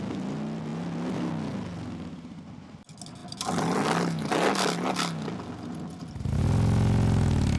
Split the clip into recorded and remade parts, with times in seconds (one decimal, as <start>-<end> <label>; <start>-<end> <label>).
0.0-7.6 recorded